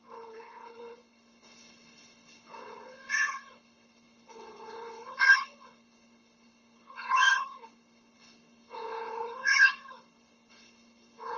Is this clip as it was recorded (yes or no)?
no